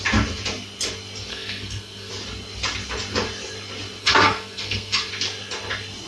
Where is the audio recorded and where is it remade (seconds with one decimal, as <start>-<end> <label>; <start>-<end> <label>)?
0.0-1.3 recorded; 1.3-2.1 remade; 2.1-4.0 recorded; 4.0-5.1 remade; 5.1-6.1 recorded